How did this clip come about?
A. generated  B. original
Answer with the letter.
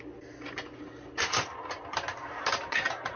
B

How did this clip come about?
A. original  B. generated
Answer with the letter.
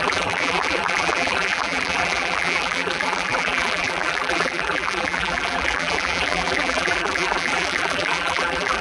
B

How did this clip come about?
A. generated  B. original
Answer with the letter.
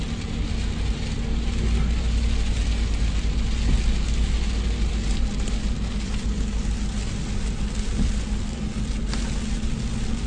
B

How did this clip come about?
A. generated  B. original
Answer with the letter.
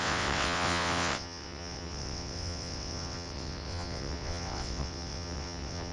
A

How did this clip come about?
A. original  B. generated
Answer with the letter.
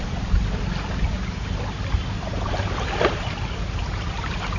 A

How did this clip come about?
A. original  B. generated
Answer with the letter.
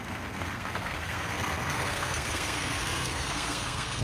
B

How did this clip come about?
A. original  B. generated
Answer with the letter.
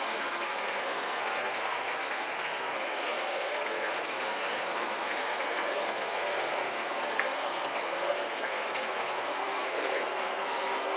B